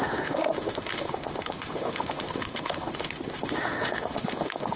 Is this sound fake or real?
fake